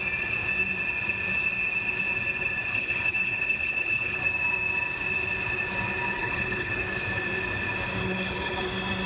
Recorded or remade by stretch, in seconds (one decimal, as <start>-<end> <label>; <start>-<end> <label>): 0.0-2.7 recorded; 2.7-4.2 remade; 4.2-6.2 recorded; 6.2-6.7 remade; 6.7-8.0 recorded; 8.0-8.6 remade; 8.6-9.1 recorded